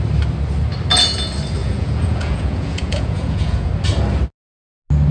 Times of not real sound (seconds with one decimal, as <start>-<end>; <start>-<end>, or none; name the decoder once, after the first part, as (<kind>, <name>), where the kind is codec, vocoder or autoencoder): 1.6-3.7 (vocoder, Vocos)